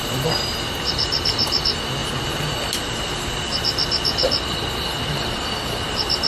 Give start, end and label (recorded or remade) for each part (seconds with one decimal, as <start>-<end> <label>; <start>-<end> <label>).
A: 0.0-6.3 recorded